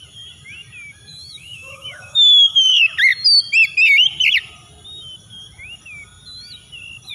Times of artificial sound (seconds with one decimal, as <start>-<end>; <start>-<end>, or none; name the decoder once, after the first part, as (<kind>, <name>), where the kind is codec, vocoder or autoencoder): 1.1-2.8 (autoencoder, DAC-VAE)